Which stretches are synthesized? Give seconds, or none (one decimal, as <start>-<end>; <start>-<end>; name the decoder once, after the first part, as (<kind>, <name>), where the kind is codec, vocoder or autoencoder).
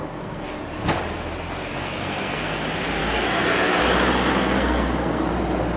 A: 0.0-0.6 (codec, SNAC); 1.7-2.6; 3.0-3.8; 4.3-5.3